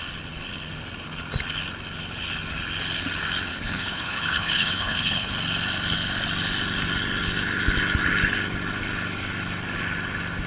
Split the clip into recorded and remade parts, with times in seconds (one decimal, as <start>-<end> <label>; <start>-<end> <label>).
0.0-3.5 recorded; 3.5-5.3 remade; 5.3-10.5 recorded